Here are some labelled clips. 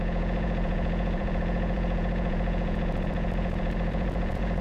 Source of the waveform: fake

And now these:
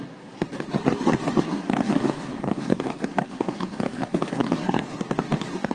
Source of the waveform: fake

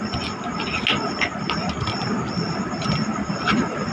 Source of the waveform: real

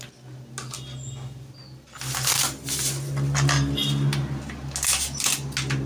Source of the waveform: real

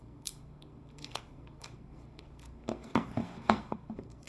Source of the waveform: fake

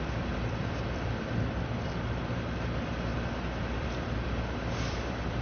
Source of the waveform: fake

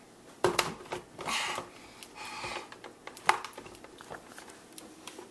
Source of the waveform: real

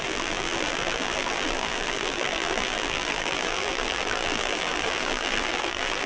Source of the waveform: fake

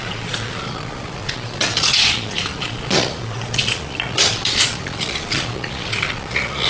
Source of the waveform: fake